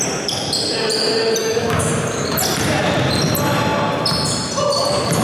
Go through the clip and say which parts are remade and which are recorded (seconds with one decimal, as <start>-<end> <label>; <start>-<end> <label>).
0.0-1.4 recorded; 1.4-1.9 remade; 1.9-5.2 recorded